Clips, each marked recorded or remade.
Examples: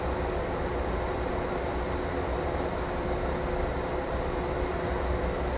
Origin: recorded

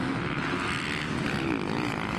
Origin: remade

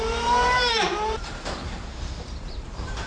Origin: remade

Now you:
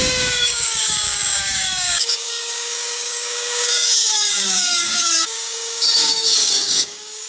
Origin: remade